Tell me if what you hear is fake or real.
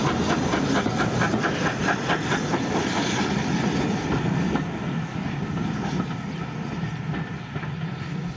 real